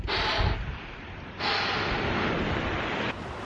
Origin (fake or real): real